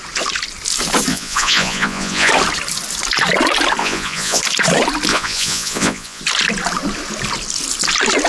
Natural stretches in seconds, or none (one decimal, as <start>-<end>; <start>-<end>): 0.0-1.1; 2.3-3.8; 4.4-5.1; 6.2-8.3